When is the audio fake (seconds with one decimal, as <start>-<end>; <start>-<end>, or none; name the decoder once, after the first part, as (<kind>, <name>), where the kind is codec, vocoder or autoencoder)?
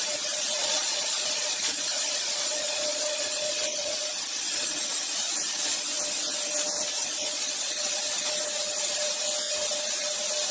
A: 0.6-4.1 (vocoder, Vocos); 7.0-7.7